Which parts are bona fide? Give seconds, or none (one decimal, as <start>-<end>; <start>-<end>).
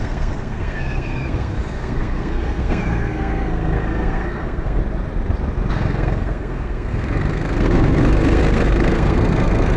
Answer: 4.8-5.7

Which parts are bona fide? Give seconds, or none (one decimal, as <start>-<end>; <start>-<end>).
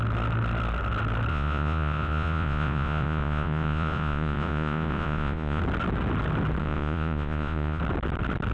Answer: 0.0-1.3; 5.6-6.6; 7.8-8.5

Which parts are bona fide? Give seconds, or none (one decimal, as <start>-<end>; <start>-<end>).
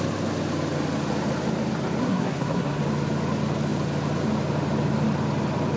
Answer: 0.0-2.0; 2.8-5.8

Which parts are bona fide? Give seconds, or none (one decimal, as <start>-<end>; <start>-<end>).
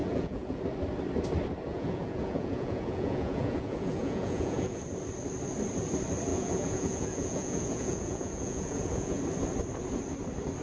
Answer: 0.6-1.7; 4.8-6.3; 9.2-10.6